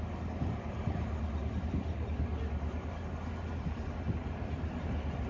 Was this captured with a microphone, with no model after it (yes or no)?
yes